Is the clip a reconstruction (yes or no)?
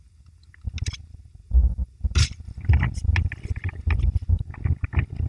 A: no